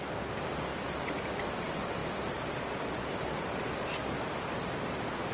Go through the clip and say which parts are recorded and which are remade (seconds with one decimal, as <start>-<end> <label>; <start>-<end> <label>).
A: 0.0-5.3 recorded